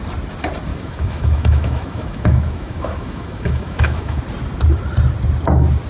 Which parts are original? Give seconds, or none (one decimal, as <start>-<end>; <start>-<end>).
0.0-0.7; 4.2-5.9